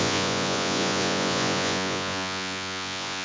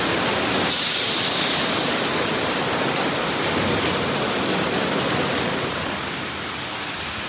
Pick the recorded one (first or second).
second